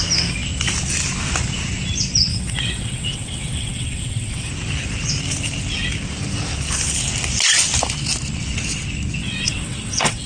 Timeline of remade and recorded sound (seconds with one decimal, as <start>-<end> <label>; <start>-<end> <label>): 0.0-2.3 recorded; 2.3-4.5 remade; 4.5-9.2 recorded; 9.2-10.3 remade